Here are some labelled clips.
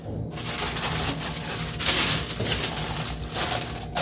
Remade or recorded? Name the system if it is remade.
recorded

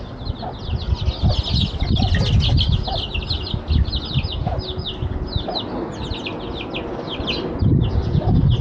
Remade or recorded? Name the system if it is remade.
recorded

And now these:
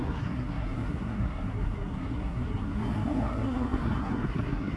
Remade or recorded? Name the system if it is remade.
remade, codec, SNAC